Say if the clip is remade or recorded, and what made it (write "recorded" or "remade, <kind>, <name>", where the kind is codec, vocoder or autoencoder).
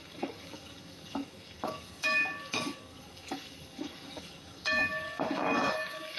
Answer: remade, codec, DAC